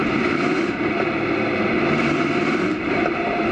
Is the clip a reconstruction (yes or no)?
yes